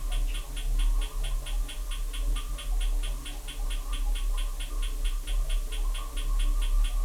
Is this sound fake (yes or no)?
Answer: no